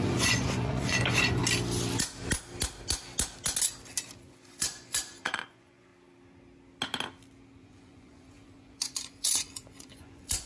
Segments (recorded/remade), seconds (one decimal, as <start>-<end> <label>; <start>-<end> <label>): 0.0-1.4 remade; 1.4-4.2 recorded; 4.2-5.9 remade; 5.9-7.6 recorded; 7.6-10.5 remade